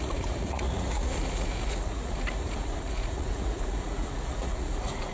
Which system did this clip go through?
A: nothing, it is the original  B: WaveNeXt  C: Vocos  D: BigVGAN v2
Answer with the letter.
C